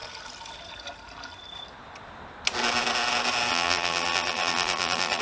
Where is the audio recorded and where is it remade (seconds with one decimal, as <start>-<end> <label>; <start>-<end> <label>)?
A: 0.0-3.5 recorded; 3.5-5.2 remade